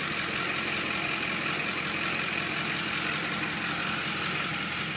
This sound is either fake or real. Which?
real